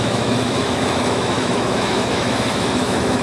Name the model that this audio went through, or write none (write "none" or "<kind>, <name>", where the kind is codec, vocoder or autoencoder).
autoencoder, DAC-VAE